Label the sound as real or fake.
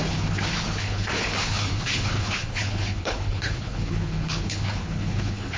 fake